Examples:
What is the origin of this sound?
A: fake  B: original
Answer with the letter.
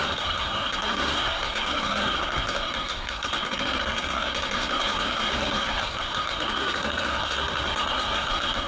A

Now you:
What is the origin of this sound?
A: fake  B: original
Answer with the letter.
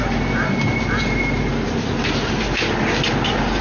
B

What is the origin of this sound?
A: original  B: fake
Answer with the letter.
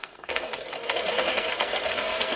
B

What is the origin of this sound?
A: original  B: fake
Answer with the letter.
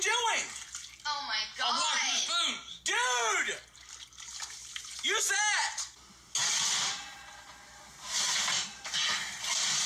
A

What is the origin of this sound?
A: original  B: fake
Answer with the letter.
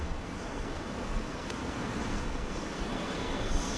B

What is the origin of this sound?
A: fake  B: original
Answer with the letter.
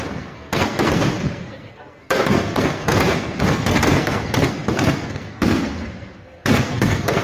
A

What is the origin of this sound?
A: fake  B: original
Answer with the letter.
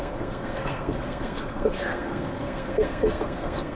A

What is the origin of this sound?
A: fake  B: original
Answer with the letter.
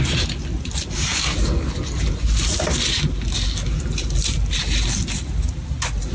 B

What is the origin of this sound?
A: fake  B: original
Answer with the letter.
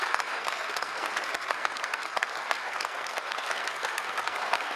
A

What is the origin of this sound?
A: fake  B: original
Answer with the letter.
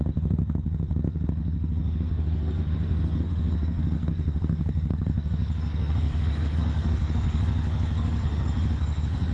A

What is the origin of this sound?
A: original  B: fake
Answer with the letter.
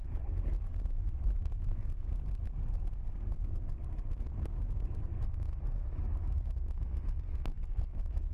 B